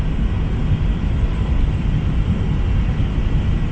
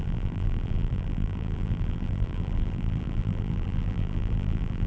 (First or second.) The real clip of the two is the first